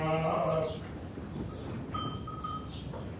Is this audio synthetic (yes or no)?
no